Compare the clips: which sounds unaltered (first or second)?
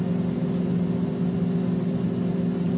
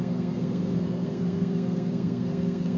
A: first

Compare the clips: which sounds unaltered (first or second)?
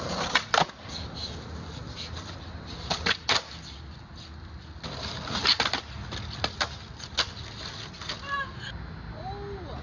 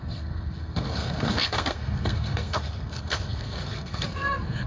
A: first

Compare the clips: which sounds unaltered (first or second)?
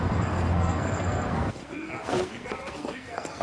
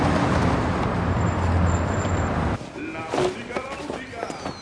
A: second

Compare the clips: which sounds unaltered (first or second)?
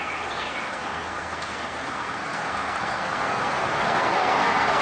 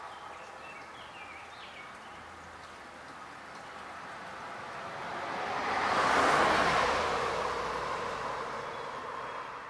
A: second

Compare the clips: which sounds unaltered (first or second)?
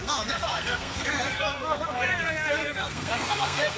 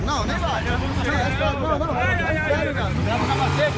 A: second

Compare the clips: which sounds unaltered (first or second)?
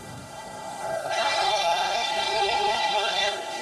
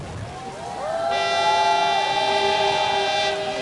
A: second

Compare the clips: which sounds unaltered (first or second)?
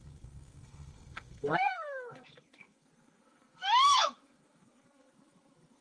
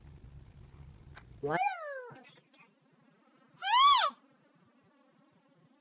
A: second